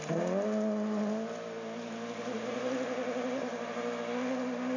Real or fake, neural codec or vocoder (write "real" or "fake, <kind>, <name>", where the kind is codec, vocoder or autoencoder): real